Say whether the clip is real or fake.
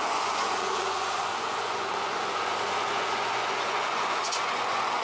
fake